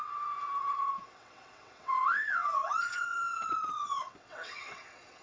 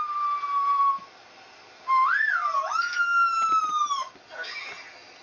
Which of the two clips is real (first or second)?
second